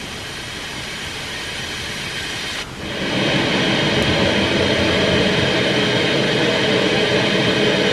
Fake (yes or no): no